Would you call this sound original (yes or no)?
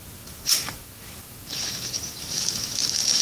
no